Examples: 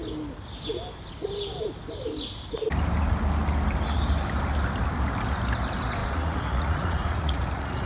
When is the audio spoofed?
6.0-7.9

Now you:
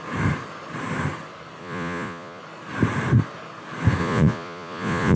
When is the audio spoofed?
1.6-2.4; 4.0-5.2

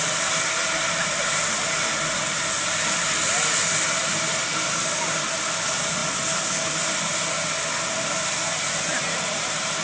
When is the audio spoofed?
none